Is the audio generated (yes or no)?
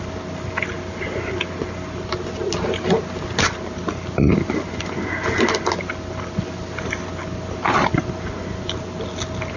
no